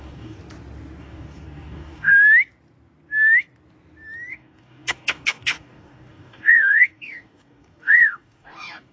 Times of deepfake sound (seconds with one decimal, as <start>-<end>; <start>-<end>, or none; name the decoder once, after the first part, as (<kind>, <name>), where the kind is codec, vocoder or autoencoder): 0.0-0.4 (codec, DAC); 1.0-2.1; 4.3-8.9